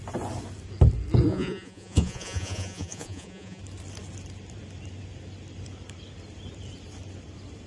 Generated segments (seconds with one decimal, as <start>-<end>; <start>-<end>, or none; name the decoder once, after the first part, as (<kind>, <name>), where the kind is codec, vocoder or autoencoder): 1.3-3.6 (vocoder, Vocos)